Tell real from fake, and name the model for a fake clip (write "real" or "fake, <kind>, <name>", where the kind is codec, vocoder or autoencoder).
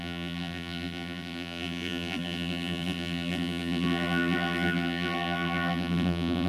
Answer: fake, vocoder, BigVGAN v2